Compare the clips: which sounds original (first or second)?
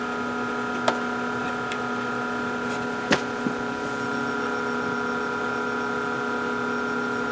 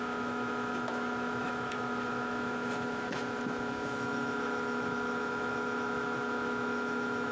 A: first